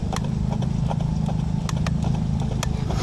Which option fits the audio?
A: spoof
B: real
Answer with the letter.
B